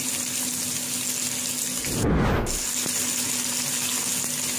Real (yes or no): yes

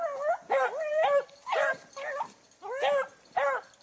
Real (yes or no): yes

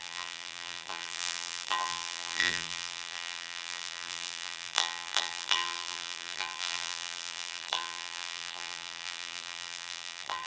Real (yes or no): no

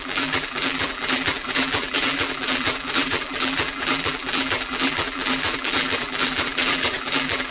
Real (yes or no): no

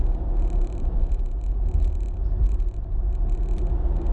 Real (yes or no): yes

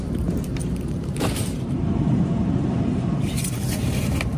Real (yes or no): no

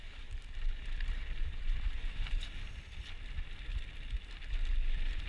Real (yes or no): no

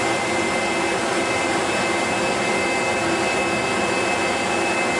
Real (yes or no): yes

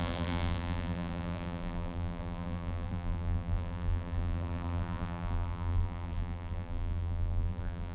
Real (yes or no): no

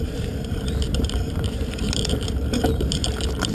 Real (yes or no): no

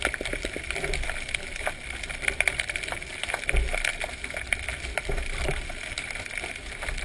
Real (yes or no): yes